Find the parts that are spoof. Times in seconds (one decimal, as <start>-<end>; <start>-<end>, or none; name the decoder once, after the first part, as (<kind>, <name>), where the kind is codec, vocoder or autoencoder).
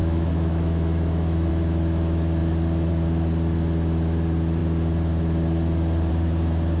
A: 0.0-1.5 (autoencoder, DAC-VAE)